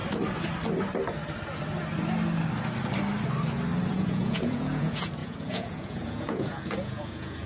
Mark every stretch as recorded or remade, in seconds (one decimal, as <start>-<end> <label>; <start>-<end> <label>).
0.0-3.9 recorded; 3.9-7.5 remade